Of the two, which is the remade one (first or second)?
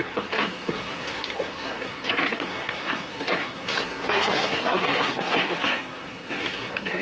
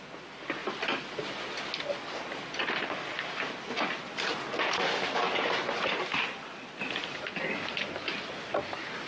first